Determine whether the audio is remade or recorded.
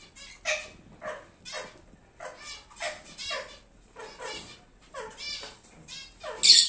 recorded